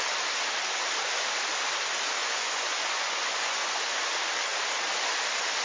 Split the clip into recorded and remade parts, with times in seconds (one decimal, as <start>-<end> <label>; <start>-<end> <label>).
0.0-2.2 recorded; 2.2-3.9 remade; 3.9-5.6 recorded